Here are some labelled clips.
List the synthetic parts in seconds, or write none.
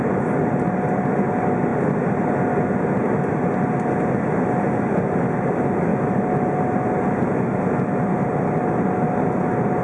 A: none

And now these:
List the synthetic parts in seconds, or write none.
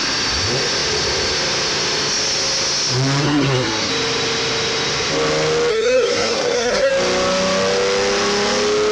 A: 3.2-3.9; 5.7-6.9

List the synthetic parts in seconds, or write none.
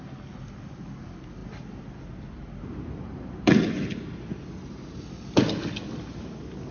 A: none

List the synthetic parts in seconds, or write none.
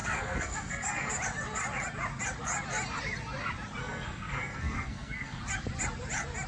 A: 0.0-1.1; 3.8-5.4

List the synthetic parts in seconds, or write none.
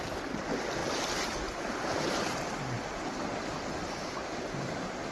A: none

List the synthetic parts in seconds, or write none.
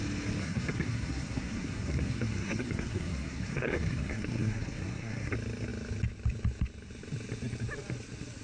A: 0.4-5.3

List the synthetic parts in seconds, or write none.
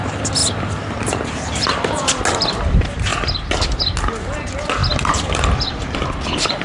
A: none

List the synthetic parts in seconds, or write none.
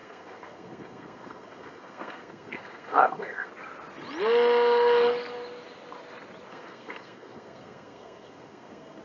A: 0.0-3.5; 6.5-9.0